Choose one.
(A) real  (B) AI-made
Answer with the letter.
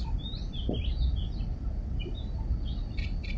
A